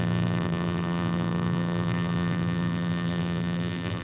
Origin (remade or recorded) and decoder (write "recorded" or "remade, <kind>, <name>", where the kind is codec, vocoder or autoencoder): remade, vocoder, BigVGAN v2